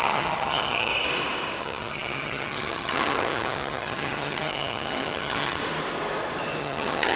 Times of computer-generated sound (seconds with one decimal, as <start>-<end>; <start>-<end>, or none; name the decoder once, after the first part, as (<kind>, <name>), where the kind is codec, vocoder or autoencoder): 0.0-0.9 (vocoder, HiFi-GAN); 1.6-5.6; 6.6-7.2